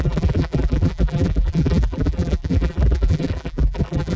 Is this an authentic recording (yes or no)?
no